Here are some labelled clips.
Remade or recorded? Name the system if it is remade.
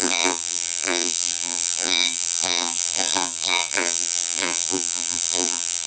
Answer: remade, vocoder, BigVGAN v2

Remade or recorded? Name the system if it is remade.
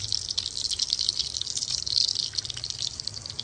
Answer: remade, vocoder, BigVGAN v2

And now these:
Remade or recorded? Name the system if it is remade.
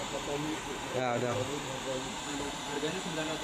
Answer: remade, vocoder, BigVGAN v2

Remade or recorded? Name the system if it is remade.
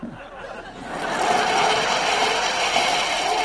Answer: recorded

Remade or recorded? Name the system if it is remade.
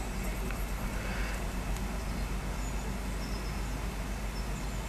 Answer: recorded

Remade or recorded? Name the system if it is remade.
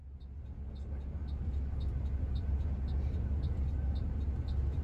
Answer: recorded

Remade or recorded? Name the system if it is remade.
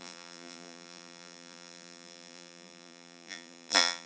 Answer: remade, vocoder, BigVGAN v2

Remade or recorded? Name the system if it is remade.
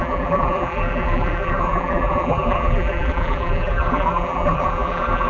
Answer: remade, vocoder, BigVGAN v2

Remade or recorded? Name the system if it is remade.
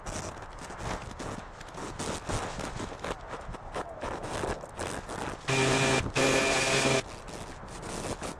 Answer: recorded